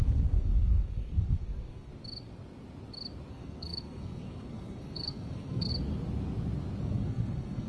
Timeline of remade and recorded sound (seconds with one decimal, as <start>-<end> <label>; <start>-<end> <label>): 0.0-1.9 remade; 1.9-3.3 recorded; 3.3-5.7 remade; 5.7-6.8 recorded; 6.8-7.7 remade